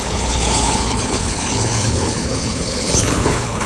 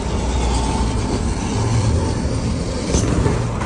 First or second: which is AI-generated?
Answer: first